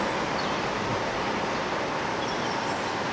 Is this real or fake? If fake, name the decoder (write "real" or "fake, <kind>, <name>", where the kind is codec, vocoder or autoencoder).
real